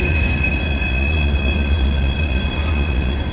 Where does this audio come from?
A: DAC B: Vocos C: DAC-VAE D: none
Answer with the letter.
B